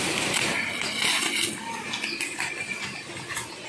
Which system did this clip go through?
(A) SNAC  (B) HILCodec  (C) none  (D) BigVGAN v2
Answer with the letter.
C